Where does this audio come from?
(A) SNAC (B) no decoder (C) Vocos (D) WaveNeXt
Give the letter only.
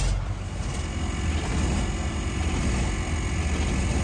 B